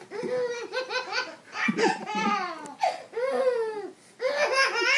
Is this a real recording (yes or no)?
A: yes